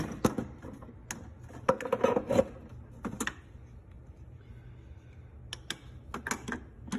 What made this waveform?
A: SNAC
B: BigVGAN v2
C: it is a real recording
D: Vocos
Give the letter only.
C